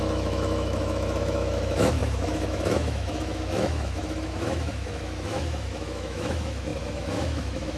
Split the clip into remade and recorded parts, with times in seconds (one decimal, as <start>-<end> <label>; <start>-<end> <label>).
0.0-7.8 remade

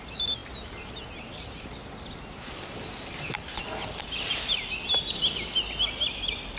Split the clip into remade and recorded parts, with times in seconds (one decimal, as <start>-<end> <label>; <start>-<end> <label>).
0.0-6.6 recorded

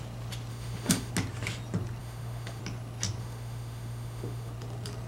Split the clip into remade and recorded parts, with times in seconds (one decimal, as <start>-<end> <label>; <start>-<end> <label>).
0.0-0.5 recorded; 0.5-1.1 remade; 1.1-2.0 recorded; 2.0-2.6 remade; 2.6-3.2 recorded; 3.2-4.5 remade; 4.5-5.1 recorded

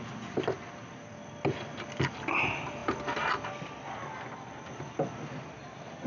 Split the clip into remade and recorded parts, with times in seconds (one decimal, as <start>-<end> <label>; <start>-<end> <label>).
0.0-6.1 recorded

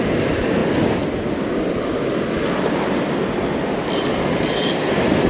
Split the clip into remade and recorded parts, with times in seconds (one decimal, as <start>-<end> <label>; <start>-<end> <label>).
0.0-5.3 recorded